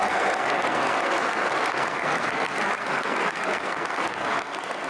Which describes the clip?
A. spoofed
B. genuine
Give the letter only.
A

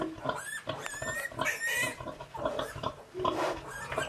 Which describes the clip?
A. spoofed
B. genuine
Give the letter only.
B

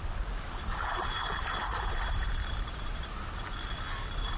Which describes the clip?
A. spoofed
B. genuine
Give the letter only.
B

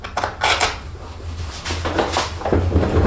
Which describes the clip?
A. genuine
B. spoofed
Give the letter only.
A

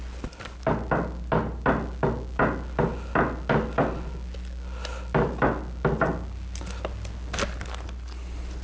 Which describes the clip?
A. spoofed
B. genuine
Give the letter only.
B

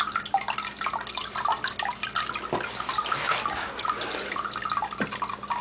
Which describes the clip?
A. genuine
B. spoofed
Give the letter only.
A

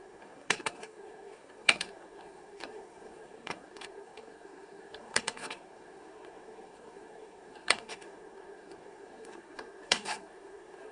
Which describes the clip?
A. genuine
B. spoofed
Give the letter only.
B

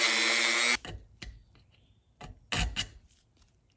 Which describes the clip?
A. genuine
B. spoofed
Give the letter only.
A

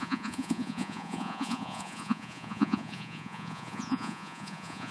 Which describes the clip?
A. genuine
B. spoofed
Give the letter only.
B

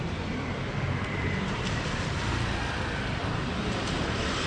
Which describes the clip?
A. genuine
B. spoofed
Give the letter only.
B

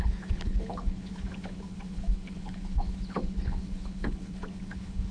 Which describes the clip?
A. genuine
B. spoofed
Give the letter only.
B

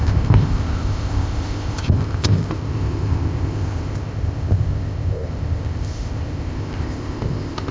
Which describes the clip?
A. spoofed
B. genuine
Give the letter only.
A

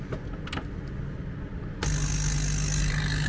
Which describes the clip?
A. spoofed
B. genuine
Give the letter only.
B